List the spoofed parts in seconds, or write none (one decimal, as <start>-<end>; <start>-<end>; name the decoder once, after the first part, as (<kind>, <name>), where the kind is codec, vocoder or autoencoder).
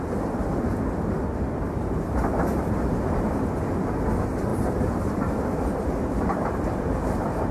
4.5-7.5 (vocoder, BigVGAN v2)